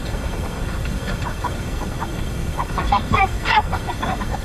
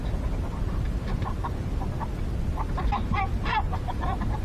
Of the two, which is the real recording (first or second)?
second